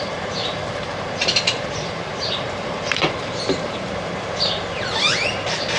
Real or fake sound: fake